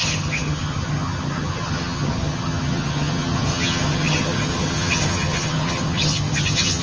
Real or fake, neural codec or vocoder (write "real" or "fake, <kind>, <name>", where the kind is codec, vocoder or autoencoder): fake, vocoder, HiFi-GAN